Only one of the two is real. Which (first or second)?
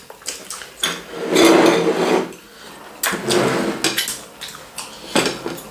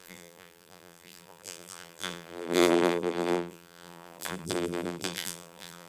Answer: first